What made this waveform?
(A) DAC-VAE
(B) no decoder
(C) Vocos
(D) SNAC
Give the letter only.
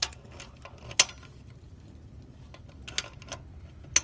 B